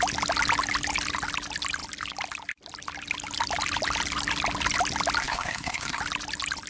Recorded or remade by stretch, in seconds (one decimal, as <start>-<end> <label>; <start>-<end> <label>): 0.0-5.2 recorded; 5.2-6.0 remade; 6.0-6.7 recorded